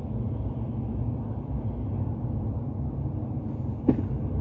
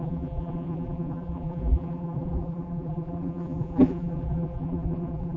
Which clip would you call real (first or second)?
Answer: first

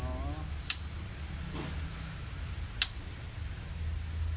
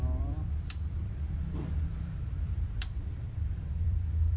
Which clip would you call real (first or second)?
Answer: first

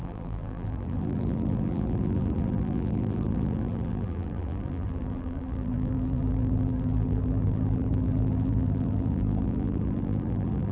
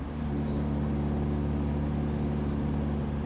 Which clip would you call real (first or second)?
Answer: second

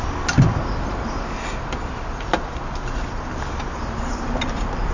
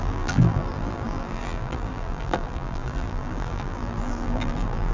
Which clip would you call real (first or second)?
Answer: first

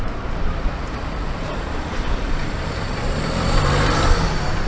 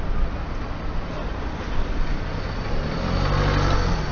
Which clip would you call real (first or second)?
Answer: second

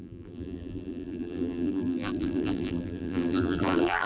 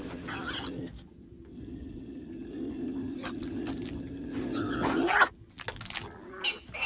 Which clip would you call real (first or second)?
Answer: second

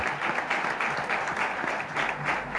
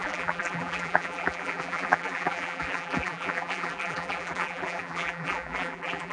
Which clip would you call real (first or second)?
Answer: first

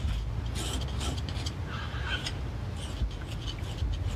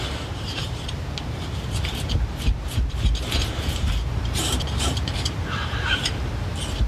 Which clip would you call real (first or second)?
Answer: first